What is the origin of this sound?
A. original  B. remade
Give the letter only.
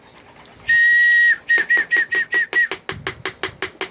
A